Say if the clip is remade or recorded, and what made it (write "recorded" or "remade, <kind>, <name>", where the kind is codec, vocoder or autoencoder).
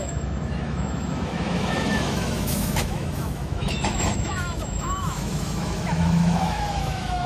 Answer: remade, autoencoder, DAC-VAE